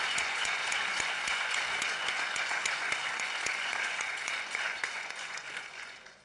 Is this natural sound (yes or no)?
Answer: no